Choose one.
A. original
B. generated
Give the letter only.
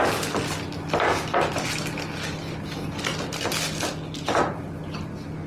A